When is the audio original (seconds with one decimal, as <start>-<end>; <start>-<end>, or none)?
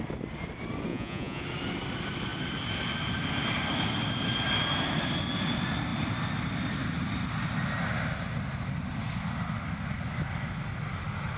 0.0-0.9; 1.4-11.4